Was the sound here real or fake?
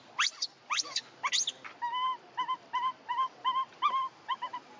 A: real